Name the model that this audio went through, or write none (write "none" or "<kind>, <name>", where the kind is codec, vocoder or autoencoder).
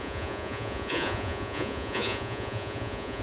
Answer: vocoder, Vocos